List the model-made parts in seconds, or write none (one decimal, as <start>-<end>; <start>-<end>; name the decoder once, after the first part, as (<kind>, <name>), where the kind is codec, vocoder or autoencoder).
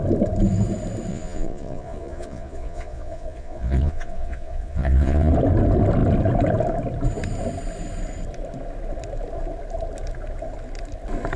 1.1-5.3 (vocoder, Vocos)